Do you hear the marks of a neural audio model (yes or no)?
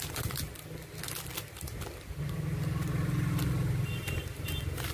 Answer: no